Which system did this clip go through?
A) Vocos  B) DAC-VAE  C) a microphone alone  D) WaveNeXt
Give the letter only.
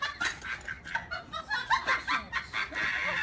C